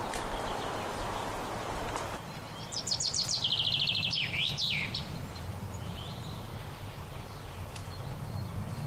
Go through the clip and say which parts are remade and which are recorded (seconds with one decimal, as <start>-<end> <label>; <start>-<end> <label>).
0.0-6.5 remade; 6.5-7.2 recorded; 7.2-7.8 remade; 7.8-8.9 recorded